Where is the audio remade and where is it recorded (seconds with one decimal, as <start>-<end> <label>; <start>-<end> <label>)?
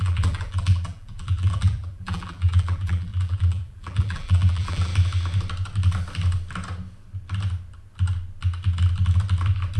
0.0-4.9 remade; 4.9-9.8 recorded